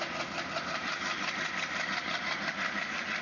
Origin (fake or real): real